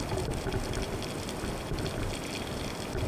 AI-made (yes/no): no